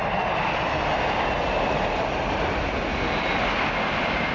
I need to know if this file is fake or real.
real